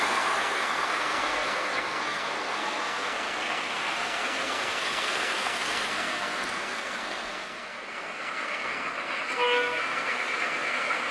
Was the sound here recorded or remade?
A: remade